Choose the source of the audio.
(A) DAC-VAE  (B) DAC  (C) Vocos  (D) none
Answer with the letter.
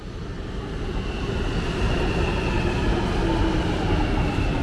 D